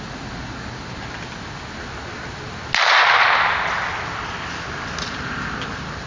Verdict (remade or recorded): recorded